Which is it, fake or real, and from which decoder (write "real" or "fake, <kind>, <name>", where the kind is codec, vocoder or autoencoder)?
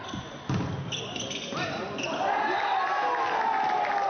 real